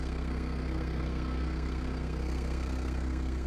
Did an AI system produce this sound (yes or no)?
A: yes